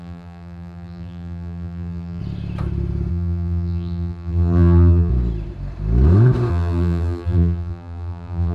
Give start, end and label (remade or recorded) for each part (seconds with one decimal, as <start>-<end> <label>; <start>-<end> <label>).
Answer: 0.0-2.2 remade; 2.2-3.1 recorded; 3.1-5.1 remade; 5.1-6.5 recorded; 6.5-8.5 remade